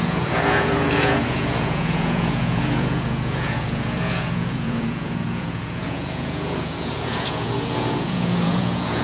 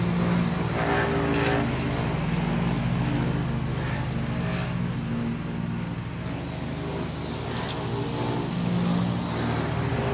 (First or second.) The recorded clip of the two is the second